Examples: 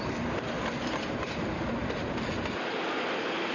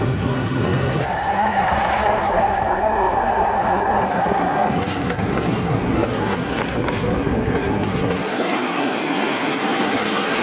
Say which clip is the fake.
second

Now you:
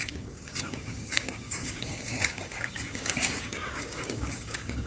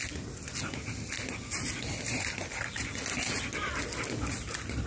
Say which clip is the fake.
first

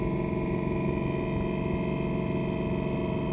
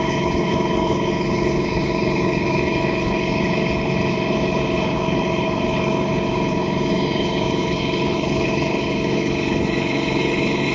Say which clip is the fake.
second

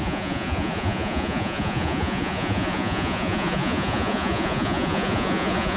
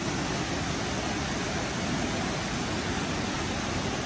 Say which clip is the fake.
first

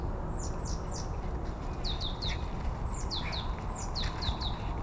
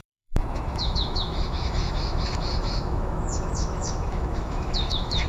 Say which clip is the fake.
second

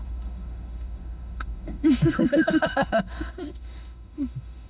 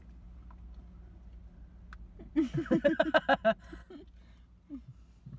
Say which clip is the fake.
first